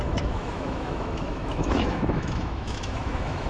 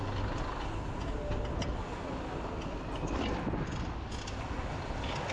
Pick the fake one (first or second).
first